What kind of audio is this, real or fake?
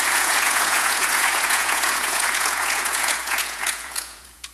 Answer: fake